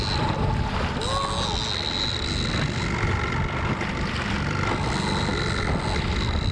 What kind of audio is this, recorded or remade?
recorded